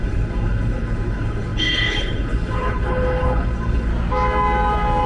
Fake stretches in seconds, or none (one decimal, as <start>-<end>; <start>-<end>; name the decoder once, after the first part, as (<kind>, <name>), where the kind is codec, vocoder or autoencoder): 0.0-3.9 (codec, HILCodec)